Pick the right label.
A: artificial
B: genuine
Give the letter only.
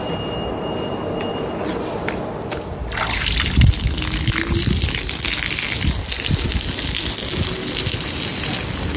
B